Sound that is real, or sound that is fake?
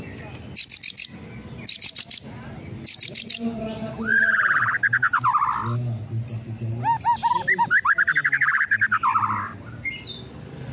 real